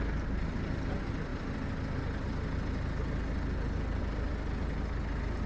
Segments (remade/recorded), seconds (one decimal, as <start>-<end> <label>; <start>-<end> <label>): 0.0-5.5 recorded